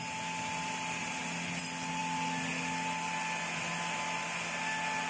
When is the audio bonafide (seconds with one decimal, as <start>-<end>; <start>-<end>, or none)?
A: 0.0-1.0; 1.6-5.1